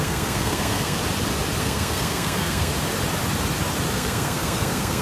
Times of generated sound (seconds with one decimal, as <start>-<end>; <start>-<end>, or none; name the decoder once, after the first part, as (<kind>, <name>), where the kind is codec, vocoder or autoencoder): 0.0-1.0 (codec, SNAC); 1.6-2.7; 3.9-5.0

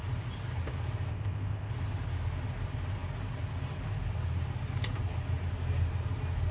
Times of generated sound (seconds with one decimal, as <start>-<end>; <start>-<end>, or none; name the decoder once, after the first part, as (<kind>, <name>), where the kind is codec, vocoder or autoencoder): 1.1-1.7 (codec, ZipCodec)

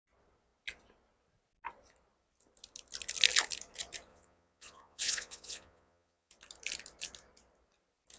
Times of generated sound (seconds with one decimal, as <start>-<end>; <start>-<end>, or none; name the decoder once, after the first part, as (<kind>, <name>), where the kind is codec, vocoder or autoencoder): 4.1-6.3 (vocoder, Vocos)